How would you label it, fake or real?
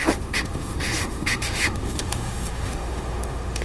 fake